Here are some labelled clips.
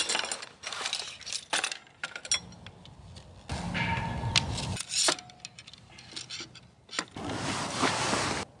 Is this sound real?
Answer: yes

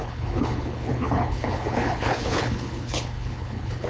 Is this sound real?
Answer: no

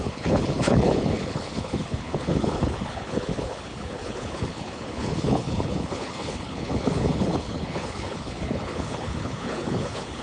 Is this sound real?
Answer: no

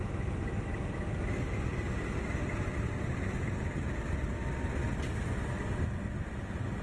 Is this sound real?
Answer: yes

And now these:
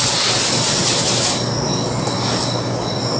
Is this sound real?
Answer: yes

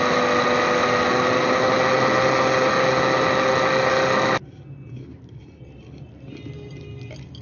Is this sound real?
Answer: yes